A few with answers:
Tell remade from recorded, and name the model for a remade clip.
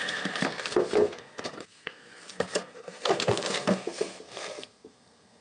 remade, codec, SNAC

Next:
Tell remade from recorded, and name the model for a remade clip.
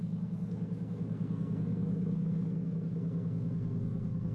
remade, codec, SNAC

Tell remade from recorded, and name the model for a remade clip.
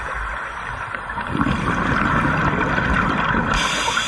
recorded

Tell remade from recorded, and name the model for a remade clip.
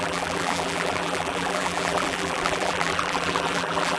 remade, vocoder, BigVGAN v2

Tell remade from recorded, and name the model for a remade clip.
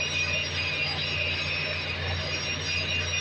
recorded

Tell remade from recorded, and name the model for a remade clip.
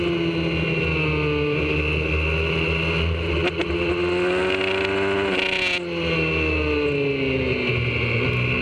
recorded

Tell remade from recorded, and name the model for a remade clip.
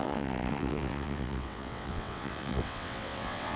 remade, vocoder, WaveNeXt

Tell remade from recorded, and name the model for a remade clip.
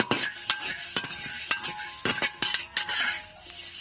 recorded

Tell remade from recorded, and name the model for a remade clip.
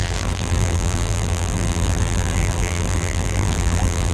remade, vocoder, BigVGAN v2